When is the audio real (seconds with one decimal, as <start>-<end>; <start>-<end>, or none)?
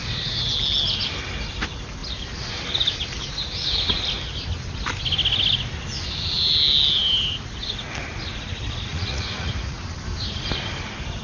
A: 0.0-8.9; 9.8-11.2